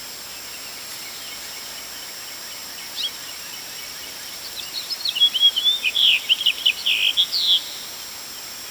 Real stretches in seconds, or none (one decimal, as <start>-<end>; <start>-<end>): 0.0-2.6; 6.9-8.7